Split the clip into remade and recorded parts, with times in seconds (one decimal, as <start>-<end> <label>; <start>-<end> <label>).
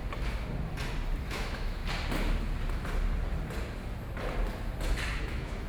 0.0-1.3 recorded; 1.3-1.8 remade; 1.8-5.2 recorded; 5.2-5.7 remade